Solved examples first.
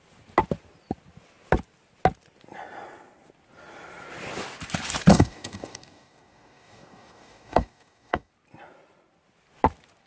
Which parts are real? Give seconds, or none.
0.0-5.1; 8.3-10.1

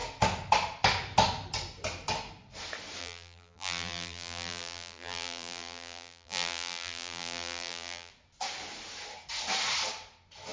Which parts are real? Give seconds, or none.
0.0-3.0; 8.1-10.5

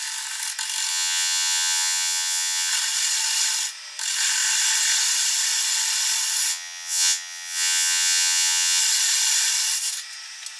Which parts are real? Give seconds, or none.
0.0-0.9; 2.7-6.5; 8.8-10.6